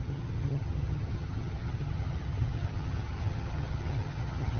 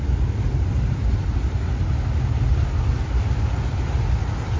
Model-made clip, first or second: first